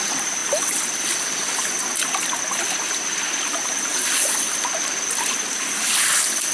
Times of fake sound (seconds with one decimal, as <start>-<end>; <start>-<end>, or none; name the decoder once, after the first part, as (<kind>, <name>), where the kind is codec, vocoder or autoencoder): none